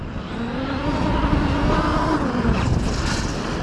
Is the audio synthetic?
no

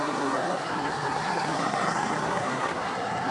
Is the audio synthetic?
yes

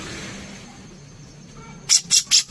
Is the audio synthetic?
no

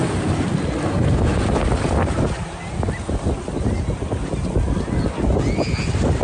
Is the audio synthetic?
no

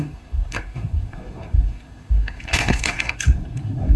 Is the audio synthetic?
yes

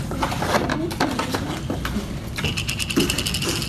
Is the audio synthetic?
no